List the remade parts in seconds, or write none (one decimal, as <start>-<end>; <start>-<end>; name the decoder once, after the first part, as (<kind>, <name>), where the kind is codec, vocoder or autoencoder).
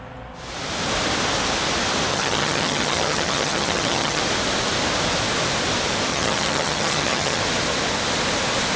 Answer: 2.1-4.2 (vocoder, HiFi-GAN); 6.1-7.4